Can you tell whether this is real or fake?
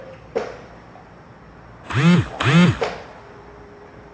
real